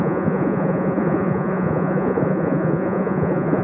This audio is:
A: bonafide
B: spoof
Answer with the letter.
B